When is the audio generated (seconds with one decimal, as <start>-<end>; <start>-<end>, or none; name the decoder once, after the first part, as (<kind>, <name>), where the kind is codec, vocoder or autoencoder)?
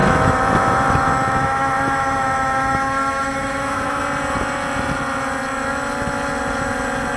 0.0-4.0 (autoencoder, DAC-VAE)